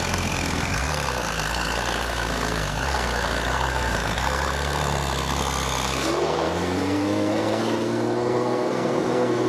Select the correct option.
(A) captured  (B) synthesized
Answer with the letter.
B